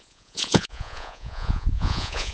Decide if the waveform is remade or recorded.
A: remade